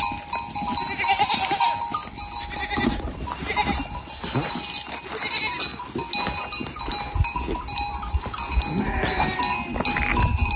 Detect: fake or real real